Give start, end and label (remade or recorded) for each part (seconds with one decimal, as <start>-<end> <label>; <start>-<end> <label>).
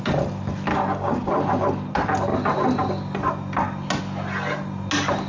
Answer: 0.0-0.7 recorded; 0.7-1.3 remade; 1.3-5.3 recorded